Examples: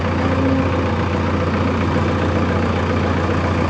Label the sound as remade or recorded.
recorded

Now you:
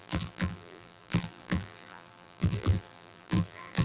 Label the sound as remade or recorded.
remade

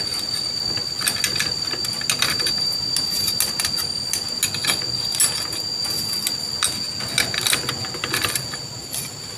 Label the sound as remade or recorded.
recorded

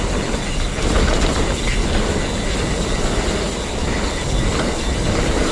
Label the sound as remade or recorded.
recorded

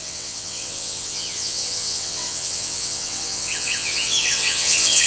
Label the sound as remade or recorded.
remade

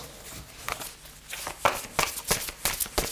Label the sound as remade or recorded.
recorded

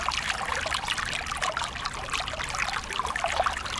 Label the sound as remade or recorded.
recorded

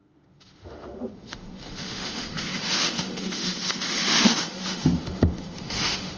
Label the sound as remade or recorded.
remade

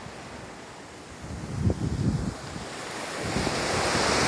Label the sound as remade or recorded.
recorded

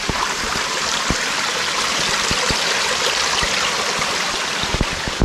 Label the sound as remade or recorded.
recorded